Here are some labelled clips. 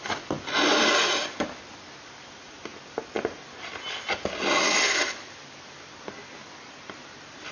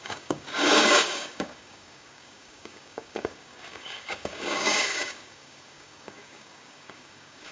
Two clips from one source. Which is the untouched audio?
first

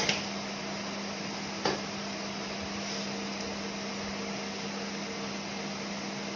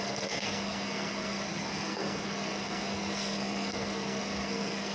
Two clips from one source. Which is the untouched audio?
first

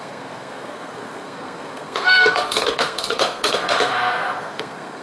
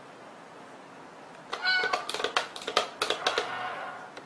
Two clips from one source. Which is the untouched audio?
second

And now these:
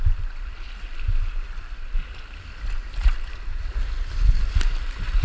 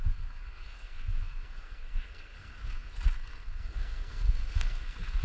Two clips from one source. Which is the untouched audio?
first